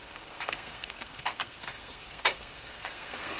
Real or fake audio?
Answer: fake